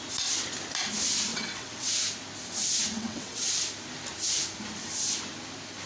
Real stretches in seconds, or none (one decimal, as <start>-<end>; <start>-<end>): 0.0-1.3; 1.9-2.9; 3.5-5.9